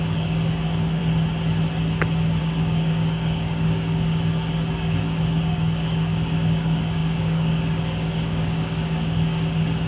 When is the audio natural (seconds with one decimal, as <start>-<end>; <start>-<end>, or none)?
1.0-2.4